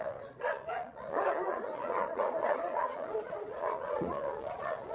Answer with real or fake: fake